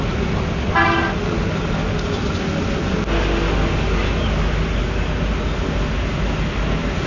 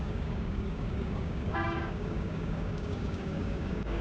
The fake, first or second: second